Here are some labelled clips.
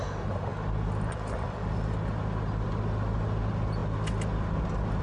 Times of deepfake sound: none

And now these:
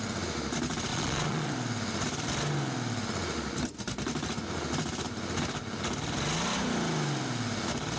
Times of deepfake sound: 0.9-1.5

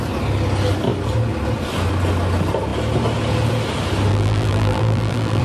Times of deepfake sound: 4.1-5.4

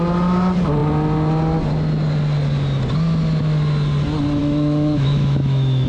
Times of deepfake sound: 4.4-5.9

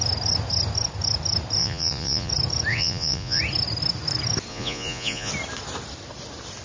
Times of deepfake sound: 1.6-2.3; 2.7-3.4; 4.5-5.3